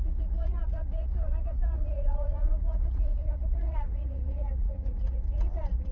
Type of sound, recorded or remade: remade